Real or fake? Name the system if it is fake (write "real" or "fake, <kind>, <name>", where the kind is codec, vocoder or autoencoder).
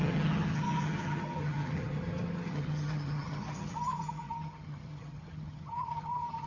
fake, vocoder, HiFi-GAN